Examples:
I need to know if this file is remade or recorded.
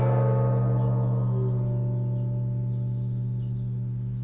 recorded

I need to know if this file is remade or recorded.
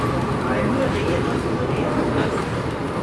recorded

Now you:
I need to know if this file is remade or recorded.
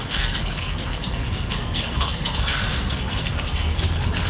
remade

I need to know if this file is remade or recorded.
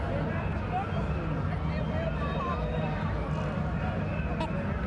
recorded